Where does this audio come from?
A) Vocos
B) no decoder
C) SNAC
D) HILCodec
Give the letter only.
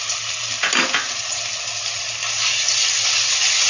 B